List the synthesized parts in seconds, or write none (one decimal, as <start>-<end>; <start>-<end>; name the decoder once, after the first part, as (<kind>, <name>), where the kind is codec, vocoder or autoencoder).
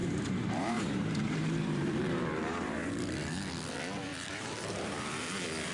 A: 0.0-2.9 (vocoder, BigVGAN v2); 4.1-5.1